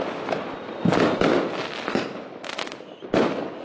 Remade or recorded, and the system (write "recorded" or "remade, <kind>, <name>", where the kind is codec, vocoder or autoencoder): recorded